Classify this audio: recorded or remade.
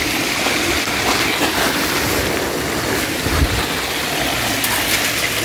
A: recorded